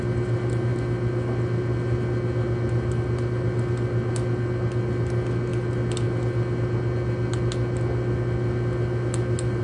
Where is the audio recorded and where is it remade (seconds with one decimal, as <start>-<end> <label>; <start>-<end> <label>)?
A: 0.0-9.6 recorded